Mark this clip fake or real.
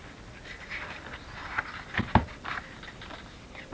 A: real